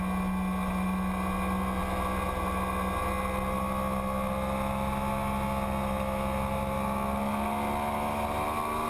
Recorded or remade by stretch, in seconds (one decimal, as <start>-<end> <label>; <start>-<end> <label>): 0.0-8.9 recorded